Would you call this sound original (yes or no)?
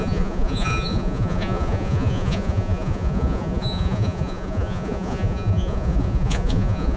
no